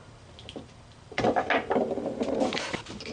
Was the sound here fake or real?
real